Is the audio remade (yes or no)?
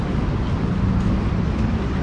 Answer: no